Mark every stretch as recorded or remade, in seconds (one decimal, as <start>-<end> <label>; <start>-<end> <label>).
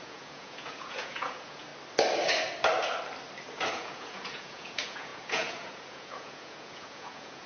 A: 0.0-1.7 remade; 1.7-3.7 recorded; 3.7-7.5 remade